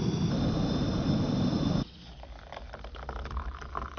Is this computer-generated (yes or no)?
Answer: no